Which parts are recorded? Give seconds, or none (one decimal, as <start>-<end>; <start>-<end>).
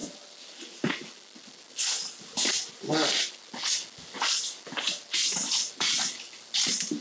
0.0-7.0